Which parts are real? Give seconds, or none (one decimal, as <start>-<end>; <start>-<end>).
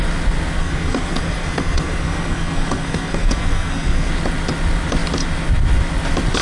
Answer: 0.0-0.6; 4.1-6.4